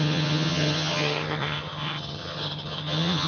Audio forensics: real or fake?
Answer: fake